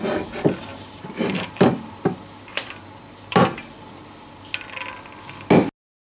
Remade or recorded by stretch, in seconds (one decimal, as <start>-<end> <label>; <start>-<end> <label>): 0.0-0.7 recorded; 0.7-4.0 remade; 4.0-6.1 recorded